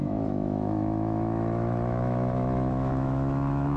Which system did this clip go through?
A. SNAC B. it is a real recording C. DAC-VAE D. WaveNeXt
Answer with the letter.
C